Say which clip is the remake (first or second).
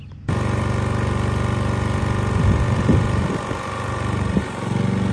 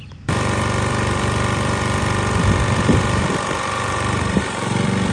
second